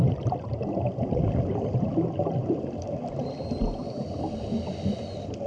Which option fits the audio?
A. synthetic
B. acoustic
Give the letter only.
B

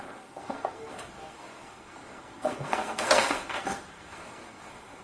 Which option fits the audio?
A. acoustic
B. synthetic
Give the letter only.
B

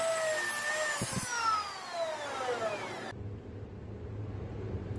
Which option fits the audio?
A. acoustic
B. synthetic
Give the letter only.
A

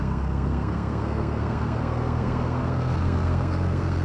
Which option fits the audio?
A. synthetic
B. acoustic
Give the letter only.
A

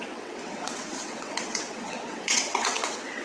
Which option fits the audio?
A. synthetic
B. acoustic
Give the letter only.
A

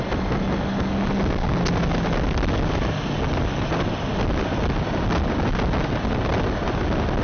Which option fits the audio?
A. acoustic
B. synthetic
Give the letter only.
A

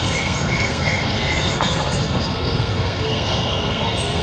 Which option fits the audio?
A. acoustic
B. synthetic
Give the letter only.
B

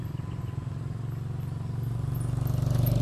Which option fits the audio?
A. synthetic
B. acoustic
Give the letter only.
B